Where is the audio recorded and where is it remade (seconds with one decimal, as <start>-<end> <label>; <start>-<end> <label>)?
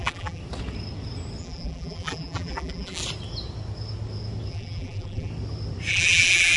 0.0-0.4 remade; 0.4-1.4 recorded; 1.4-3.0 remade; 3.0-4.5 recorded; 4.5-5.3 remade; 5.3-5.9 recorded; 5.9-6.6 remade